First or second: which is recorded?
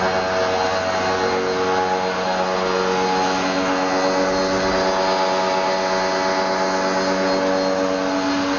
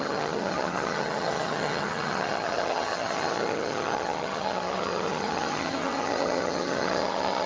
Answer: first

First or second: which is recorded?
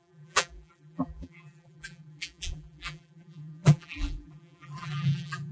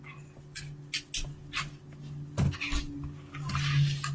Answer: second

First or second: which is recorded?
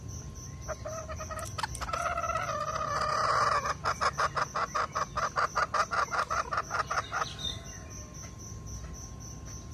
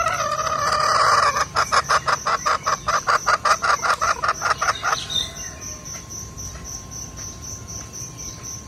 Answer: first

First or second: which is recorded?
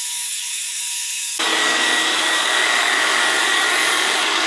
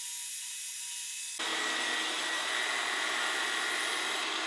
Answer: second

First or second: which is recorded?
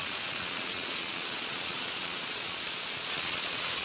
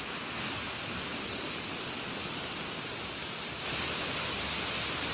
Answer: second